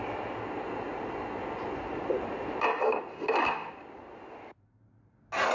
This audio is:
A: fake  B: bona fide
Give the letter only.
B